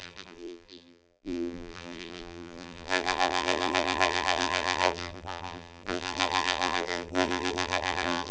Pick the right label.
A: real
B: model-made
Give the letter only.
B